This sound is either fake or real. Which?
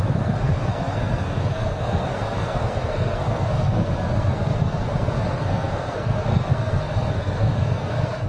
fake